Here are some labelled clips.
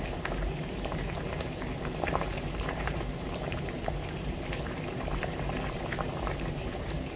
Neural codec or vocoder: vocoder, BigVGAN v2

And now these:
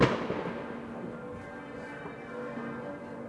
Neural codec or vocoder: none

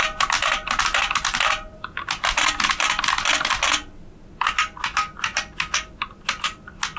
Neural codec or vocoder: none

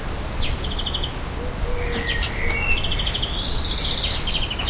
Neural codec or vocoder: none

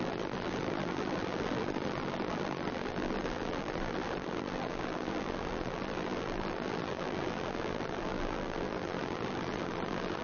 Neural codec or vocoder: vocoder, BigVGAN v2